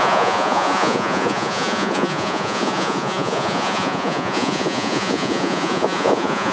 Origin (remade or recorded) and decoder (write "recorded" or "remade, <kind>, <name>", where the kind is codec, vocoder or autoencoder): remade, vocoder, Vocos